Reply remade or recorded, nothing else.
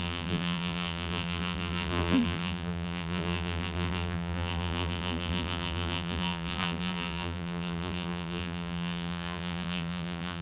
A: remade